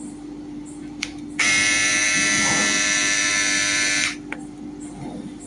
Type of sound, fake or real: fake